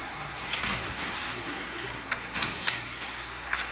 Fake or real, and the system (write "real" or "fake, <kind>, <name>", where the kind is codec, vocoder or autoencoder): fake, codec, SNAC